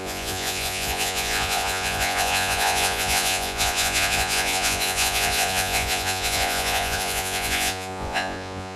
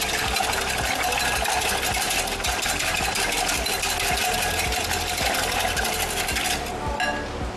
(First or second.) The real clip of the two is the second